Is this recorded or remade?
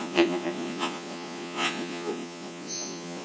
remade